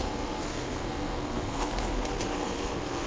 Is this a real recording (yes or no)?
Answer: no